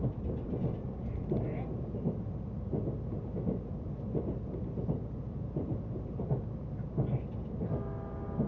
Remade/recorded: recorded